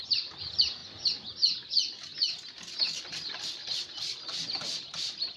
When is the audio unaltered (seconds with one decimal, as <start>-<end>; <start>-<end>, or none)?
0.8-1.7; 2.1-3.0